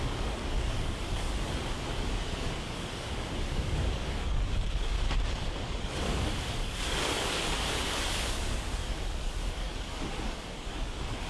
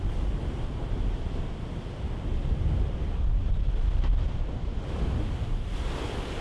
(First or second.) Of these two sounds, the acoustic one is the second